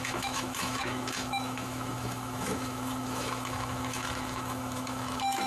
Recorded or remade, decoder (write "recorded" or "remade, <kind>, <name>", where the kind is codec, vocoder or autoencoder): remade, autoencoder, DAC-VAE